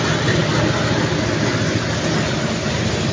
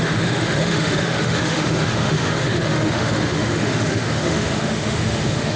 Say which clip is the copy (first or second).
second